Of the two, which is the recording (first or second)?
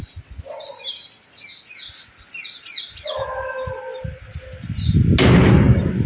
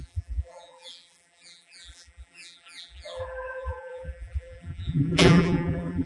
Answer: first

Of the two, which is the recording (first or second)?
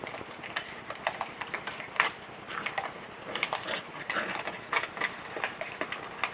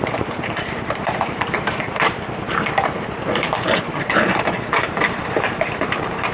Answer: first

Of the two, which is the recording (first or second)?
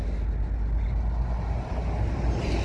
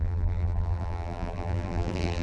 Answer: first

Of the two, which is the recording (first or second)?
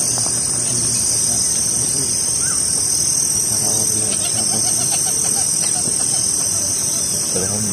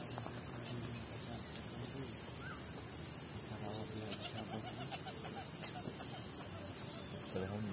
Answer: second